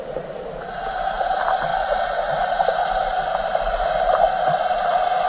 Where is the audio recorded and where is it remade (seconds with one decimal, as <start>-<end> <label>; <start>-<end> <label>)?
0.0-1.7 recorded; 1.7-5.3 remade